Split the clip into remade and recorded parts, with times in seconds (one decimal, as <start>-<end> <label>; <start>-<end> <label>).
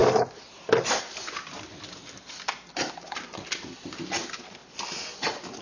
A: 0.0-5.6 recorded